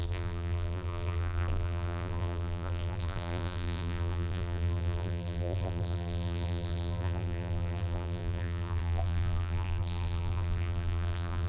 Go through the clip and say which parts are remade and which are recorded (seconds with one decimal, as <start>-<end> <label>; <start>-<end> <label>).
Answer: 0.0-11.5 remade